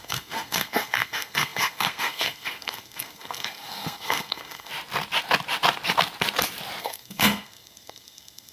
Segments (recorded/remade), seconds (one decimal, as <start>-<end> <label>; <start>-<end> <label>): 0.0-4.7 remade; 4.7-6.8 recorded; 6.8-8.5 remade